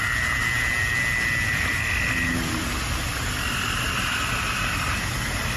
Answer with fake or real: real